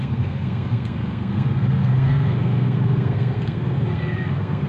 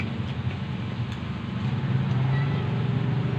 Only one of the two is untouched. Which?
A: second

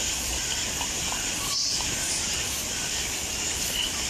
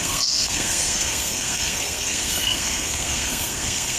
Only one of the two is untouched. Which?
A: first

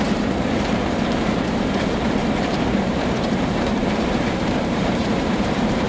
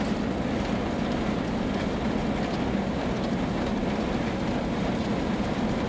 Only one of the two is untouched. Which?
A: second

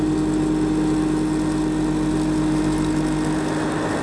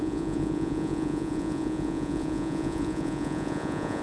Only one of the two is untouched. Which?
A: first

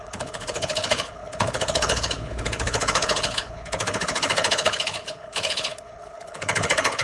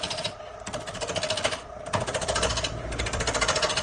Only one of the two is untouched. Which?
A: second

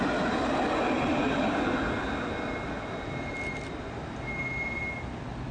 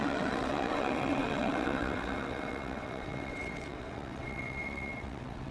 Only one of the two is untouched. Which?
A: first